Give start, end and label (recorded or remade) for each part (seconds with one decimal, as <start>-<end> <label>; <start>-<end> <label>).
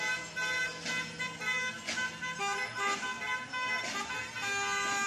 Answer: 0.0-5.1 recorded